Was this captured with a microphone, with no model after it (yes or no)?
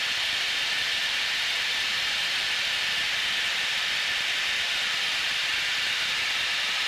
no